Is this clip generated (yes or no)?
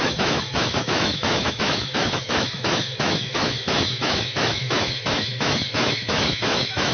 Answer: yes